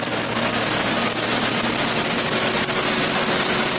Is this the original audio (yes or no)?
yes